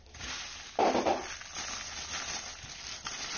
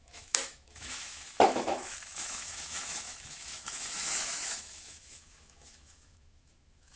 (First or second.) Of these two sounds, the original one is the first